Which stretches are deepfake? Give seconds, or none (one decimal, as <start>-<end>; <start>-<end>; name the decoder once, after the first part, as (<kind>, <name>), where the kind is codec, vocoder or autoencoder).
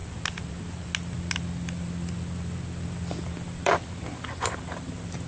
3.2-5.3 (vocoder, BigVGAN v2)